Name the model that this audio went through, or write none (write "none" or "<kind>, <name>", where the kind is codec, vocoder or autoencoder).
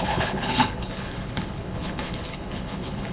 codec, HILCodec